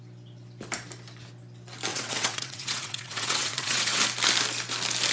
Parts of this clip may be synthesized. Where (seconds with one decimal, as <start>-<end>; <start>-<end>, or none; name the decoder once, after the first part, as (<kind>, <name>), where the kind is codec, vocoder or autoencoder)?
1.9-4.0 (vocoder, WaveNeXt)